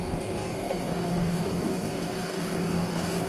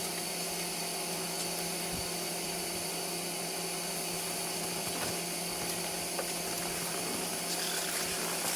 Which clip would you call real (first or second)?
second